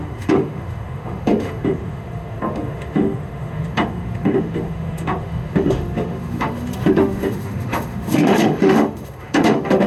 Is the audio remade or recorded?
remade